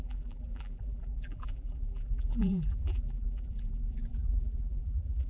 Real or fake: fake